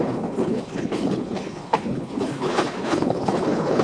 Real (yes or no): no